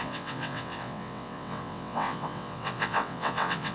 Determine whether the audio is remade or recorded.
remade